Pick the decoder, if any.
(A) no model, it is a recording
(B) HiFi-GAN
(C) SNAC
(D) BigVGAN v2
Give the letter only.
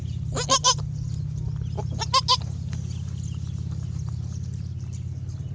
A